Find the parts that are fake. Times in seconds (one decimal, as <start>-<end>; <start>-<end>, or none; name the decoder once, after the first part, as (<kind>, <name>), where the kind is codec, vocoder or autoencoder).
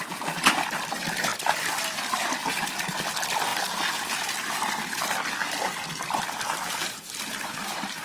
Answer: 0.0-1.3 (vocoder, BigVGAN v2); 1.8-2.4; 3.1-3.5; 5.0-8.0